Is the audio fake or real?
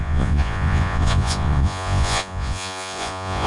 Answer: fake